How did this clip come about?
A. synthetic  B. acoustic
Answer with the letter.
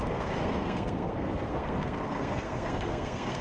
A